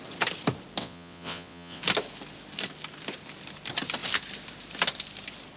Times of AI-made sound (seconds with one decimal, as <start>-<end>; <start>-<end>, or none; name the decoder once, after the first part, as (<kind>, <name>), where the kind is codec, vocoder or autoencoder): 0.8-1.8 (vocoder, WaveNeXt)